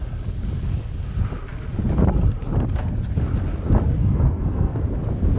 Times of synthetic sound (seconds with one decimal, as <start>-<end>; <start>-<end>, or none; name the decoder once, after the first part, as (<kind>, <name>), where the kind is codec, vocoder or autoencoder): 4.0-4.8 (codec, SNAC)